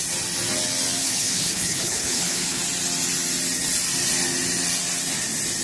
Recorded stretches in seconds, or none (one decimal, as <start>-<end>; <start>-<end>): 0.0-1.0; 2.6-5.6